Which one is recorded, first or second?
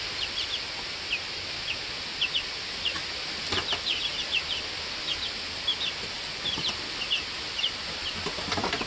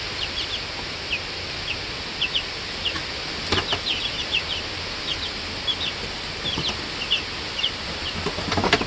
second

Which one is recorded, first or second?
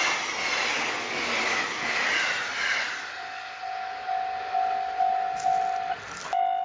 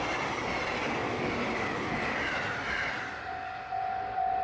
first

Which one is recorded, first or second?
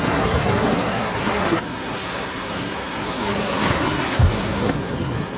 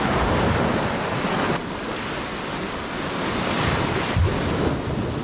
second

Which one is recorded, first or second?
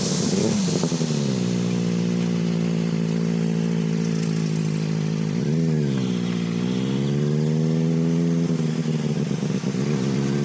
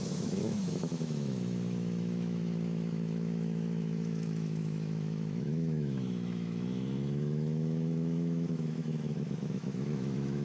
first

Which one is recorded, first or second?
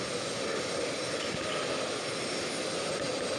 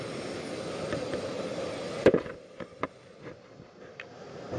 first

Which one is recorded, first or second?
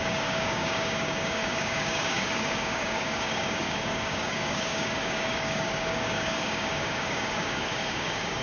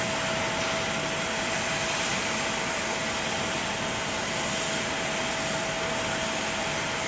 second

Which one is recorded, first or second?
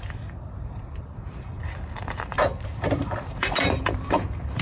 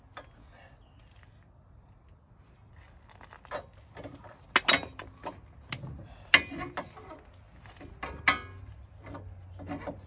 second